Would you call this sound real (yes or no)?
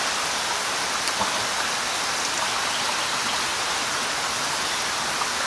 yes